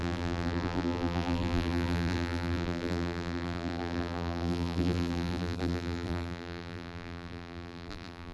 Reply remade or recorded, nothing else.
remade